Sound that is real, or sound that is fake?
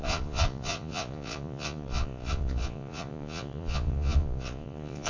fake